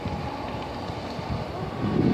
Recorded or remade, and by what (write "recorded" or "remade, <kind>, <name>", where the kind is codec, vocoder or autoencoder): recorded